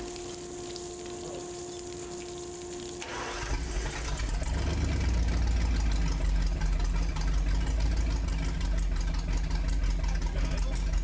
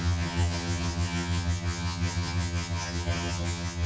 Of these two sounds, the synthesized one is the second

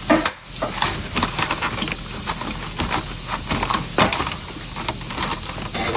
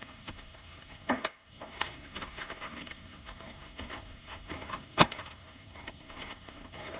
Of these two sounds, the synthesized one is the second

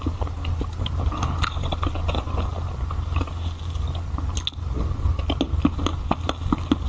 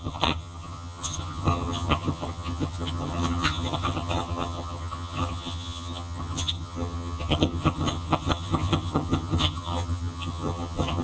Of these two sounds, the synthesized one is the second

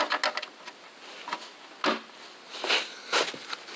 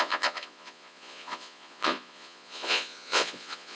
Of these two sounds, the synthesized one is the second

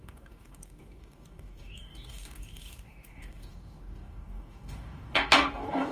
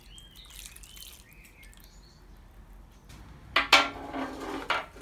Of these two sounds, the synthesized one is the first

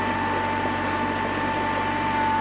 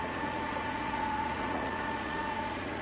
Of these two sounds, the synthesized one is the second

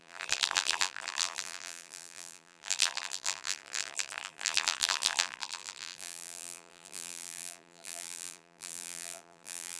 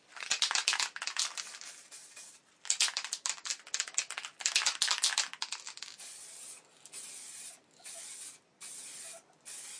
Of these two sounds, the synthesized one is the first